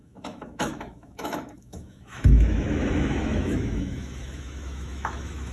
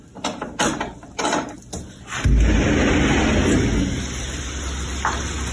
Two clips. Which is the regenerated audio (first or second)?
first